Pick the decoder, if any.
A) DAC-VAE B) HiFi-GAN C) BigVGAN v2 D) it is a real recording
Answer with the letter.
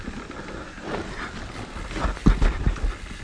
D